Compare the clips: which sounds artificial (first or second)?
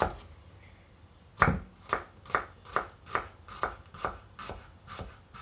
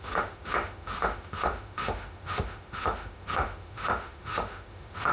second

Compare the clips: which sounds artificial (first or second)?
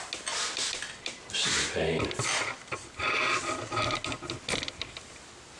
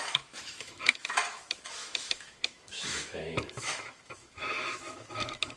second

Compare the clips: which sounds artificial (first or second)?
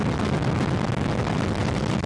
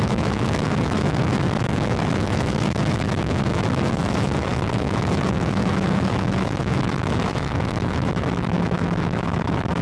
second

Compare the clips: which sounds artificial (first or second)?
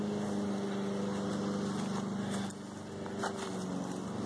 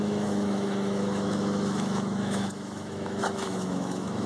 second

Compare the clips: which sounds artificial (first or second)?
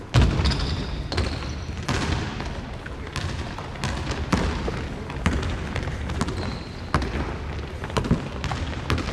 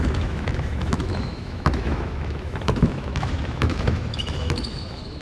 second